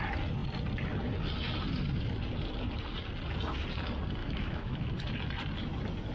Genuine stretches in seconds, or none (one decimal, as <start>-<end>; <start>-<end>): 0.0-4.2; 5.1-6.1